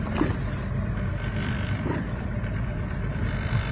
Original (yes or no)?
no